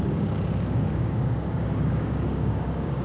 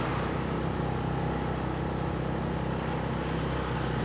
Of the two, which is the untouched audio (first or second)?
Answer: second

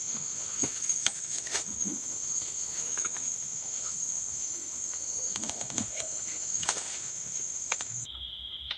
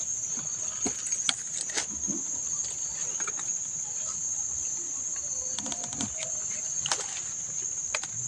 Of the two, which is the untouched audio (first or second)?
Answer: second